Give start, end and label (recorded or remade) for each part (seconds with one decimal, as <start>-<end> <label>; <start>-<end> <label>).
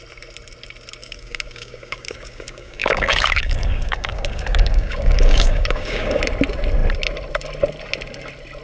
0.0-1.0 recorded; 1.0-6.2 remade; 6.2-8.6 recorded